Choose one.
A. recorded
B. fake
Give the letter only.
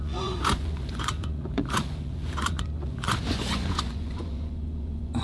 B